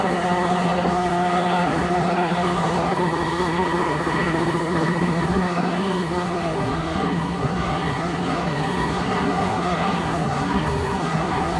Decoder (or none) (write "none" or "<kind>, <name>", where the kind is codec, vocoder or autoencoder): codec, SNAC